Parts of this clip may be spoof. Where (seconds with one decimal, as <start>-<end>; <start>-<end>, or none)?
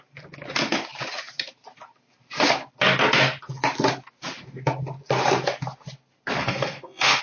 6.4-7.2